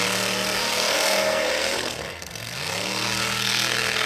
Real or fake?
fake